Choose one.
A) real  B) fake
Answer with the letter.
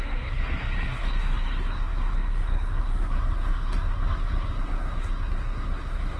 B